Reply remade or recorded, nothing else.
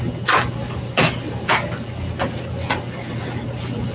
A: recorded